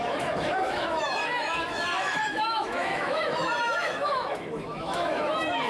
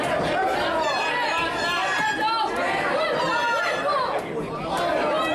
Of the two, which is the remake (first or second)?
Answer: first